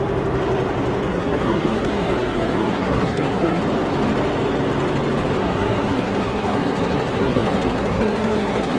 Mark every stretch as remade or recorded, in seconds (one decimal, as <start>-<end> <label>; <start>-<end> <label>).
0.0-1.1 recorded; 1.1-3.6 remade; 3.6-5.4 recorded; 5.4-8.8 remade

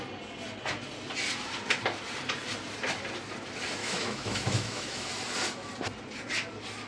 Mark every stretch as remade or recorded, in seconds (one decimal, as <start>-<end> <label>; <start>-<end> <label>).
0.0-3.8 recorded; 3.8-5.1 remade; 5.1-6.9 recorded

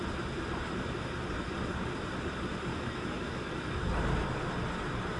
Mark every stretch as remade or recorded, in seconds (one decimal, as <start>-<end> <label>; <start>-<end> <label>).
0.0-2.7 recorded; 2.7-3.5 remade; 3.5-5.2 recorded

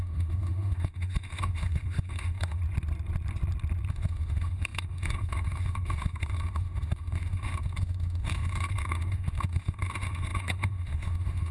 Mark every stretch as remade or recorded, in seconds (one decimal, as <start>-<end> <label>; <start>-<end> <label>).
0.0-2.6 remade; 2.6-3.9 recorded; 3.9-11.5 remade

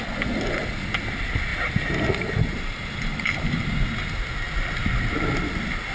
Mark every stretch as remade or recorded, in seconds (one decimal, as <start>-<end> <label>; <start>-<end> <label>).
0.0-2.5 recorded; 2.5-3.5 remade; 3.5-5.9 recorded

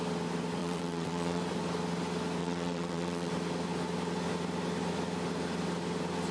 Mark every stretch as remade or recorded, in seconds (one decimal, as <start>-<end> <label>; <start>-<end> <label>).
0.0-0.6 recorded; 0.6-1.4 remade; 1.4-2.4 recorded; 2.4-3.3 remade; 3.3-6.3 recorded

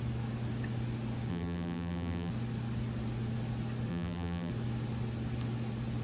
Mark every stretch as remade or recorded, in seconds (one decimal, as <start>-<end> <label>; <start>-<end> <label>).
0.0-1.3 recorded; 1.3-2.3 remade; 2.3-3.9 recorded; 3.9-4.5 remade; 4.5-6.0 recorded